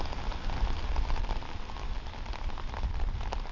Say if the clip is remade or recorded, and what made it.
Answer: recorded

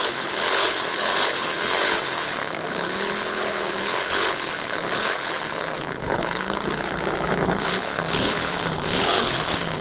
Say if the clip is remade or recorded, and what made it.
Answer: remade, codec, HILCodec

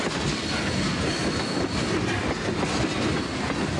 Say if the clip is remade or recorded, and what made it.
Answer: recorded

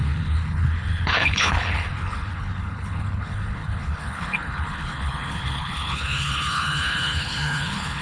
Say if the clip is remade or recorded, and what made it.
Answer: remade, codec, HILCodec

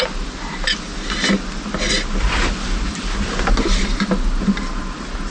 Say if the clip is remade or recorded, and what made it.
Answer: recorded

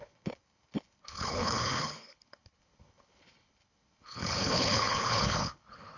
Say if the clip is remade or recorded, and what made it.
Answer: remade, codec, HILCodec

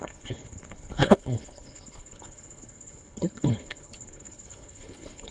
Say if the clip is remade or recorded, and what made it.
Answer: remade, codec, HILCodec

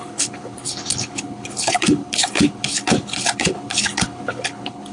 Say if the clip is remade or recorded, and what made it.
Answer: remade, codec, HILCodec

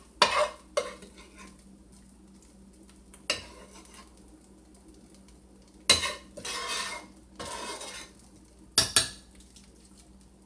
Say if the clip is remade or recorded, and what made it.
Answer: recorded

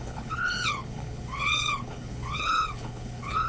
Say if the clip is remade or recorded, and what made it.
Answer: remade, codec, HILCodec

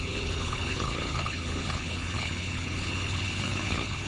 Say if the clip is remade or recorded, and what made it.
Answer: remade, codec, HILCodec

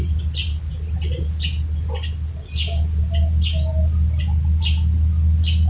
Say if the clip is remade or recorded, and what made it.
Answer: recorded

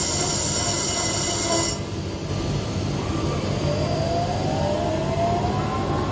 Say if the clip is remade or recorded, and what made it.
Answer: recorded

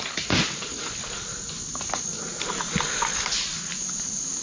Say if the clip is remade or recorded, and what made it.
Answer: recorded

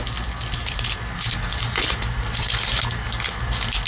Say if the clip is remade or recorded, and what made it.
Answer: recorded